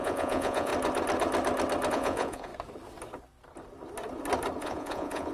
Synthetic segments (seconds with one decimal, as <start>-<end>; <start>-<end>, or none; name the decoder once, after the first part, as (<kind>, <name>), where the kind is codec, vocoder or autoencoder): 0.0-0.7 (vocoder, Vocos); 1.9-2.5; 4.6-5.3